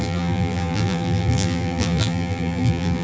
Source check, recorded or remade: remade